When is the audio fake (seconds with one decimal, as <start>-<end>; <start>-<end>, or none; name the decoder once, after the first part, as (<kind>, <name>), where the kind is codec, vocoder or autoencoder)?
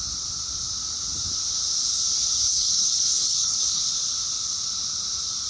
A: 2.5-3.8 (codec, HILCodec)